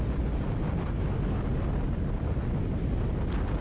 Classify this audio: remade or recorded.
recorded